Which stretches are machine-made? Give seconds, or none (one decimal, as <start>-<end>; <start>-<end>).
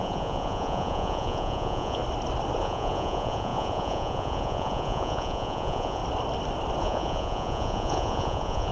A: 0.0-2.0; 2.6-6.0; 6.8-8.7